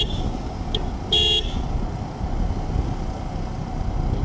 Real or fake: real